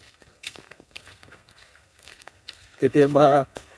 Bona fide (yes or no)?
no